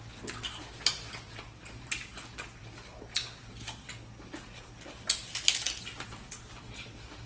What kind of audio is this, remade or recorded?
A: recorded